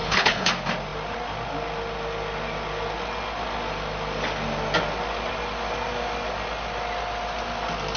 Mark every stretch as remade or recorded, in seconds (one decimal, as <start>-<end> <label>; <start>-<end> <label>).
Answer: 0.0-0.5 remade; 0.5-8.0 recorded